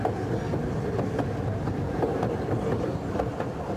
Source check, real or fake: real